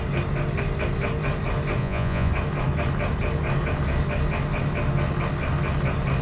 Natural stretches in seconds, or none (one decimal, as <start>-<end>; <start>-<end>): 0.0-1.8; 2.3-6.2

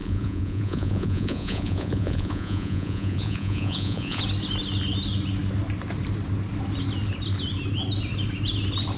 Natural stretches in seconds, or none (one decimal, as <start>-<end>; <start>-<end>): 4.2-9.0

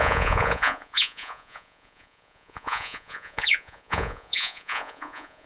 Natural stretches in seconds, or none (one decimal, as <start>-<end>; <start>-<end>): none